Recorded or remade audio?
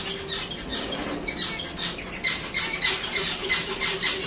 recorded